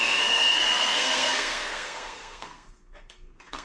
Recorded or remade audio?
remade